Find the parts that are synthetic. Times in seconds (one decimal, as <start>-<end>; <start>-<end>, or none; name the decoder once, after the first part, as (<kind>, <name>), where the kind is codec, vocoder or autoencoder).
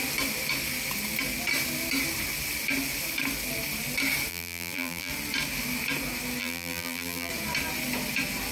4.3-5.1 (vocoder, BigVGAN v2); 6.4-7.3